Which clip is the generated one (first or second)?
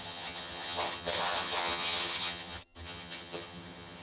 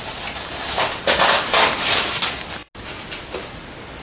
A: first